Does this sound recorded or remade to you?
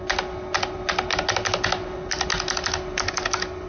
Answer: recorded